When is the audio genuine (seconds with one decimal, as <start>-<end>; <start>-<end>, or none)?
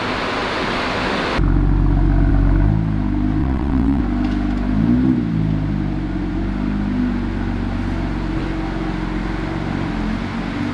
0.0-3.4; 4.0-10.7